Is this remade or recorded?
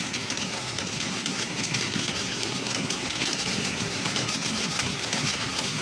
remade